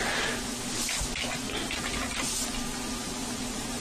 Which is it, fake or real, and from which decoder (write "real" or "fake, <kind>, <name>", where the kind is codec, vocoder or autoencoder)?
real